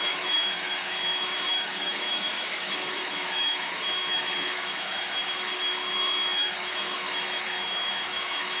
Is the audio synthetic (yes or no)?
yes